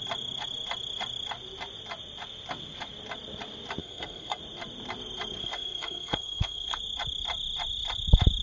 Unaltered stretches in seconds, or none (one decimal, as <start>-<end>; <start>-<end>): 0.0-3.8; 4.4-5.4; 6.8-8.4